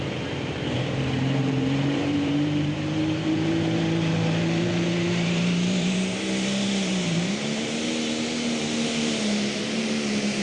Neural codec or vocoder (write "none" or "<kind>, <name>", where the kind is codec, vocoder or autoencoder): vocoder, BigVGAN v2